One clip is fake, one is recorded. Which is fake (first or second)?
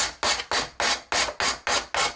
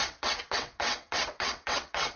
second